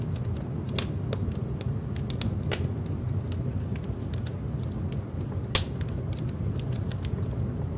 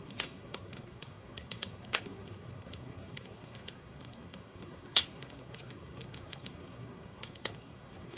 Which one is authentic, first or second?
first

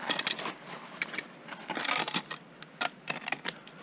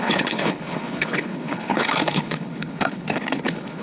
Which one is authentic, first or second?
first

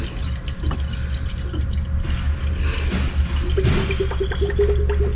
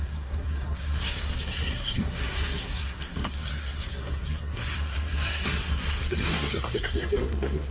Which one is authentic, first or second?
first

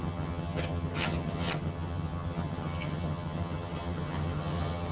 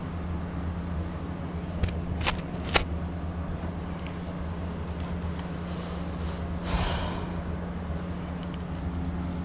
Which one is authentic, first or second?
second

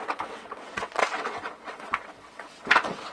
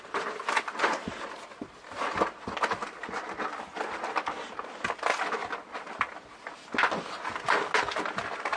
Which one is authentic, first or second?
second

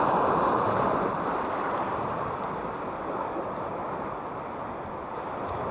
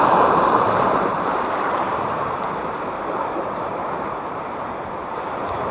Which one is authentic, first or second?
first